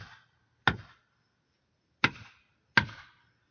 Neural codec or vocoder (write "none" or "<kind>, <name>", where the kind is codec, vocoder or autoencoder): none